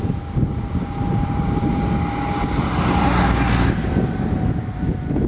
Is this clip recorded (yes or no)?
yes